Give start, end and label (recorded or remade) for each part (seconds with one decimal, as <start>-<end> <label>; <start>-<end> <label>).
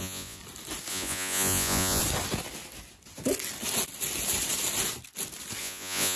0.0-0.4 remade; 0.4-0.9 recorded; 0.9-2.0 remade; 2.0-5.6 recorded; 5.6-6.2 remade